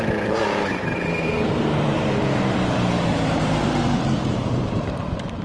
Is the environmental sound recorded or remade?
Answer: remade